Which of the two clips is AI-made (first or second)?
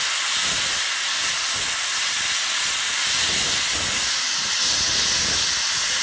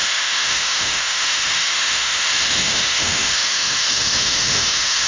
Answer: second